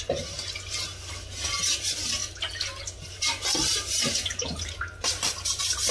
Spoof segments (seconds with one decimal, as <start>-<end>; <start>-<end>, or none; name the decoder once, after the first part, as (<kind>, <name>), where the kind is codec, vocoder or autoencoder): 0.0-2.2 (vocoder, BigVGAN v2); 5.0-5.9